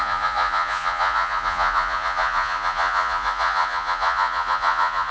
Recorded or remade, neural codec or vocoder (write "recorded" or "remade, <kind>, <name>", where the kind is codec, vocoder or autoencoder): remade, vocoder, Vocos